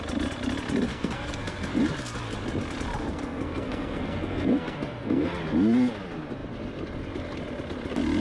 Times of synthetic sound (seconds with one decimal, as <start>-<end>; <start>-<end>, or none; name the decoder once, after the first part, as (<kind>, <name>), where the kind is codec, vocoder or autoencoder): 0.9-1.8 (codec, SNAC); 3.0-5.4